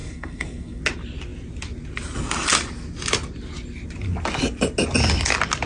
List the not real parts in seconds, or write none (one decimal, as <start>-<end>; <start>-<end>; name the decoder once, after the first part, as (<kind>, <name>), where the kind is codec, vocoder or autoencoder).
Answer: 0.0-0.8 (codec, SNAC)